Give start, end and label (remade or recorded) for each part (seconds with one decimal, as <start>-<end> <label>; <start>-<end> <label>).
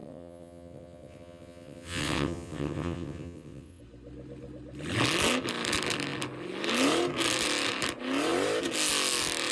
0.0-3.8 remade; 3.8-9.5 recorded